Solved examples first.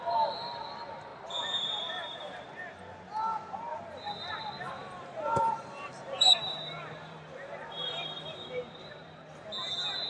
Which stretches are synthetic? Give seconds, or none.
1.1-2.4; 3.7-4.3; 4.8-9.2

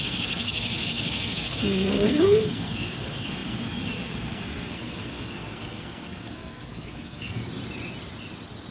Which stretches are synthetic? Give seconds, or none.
0.0-7.4